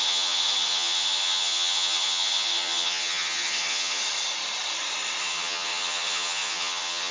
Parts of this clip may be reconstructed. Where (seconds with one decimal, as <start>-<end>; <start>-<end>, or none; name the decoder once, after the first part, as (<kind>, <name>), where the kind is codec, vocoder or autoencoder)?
0.0-4.0 (vocoder, HiFi-GAN); 5.2-7.1